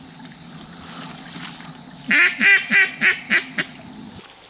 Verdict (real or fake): real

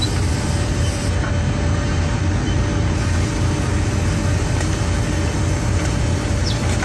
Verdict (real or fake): real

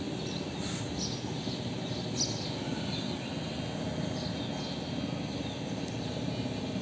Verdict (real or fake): real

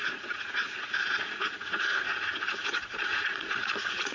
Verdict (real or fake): fake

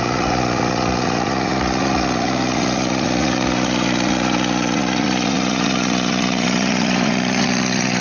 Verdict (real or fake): fake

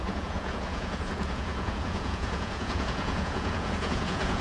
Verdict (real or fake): fake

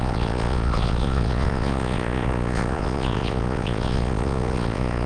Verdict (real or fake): fake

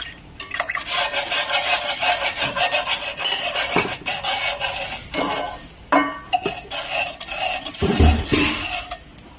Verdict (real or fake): real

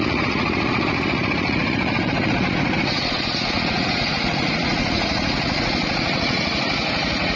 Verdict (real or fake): fake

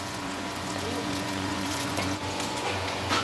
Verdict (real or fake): fake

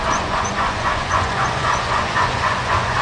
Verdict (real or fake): fake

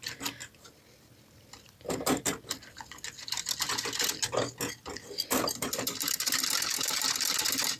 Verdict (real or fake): real